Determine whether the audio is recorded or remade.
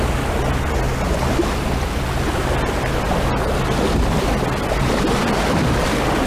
recorded